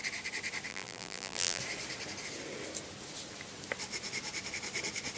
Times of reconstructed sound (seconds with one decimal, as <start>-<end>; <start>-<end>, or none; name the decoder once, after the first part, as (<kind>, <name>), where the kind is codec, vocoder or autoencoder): 0.7-1.6 (vocoder, BigVGAN v2)